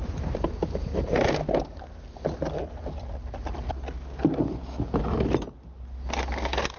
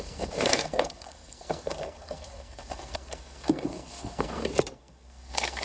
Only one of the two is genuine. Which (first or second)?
first